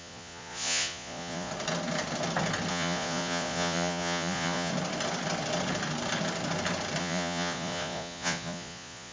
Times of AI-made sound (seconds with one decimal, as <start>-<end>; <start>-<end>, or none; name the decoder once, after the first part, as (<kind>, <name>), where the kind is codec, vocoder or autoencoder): 0.0-1.5 (vocoder, Vocos); 2.7-4.7; 7.0-9.1